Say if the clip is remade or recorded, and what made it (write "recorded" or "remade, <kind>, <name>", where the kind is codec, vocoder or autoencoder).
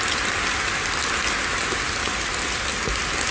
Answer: recorded